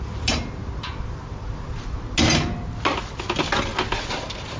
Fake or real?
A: real